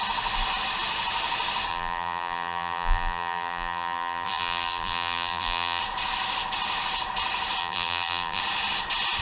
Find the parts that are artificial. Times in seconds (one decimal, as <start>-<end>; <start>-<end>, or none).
1.7-5.8; 7.6-8.4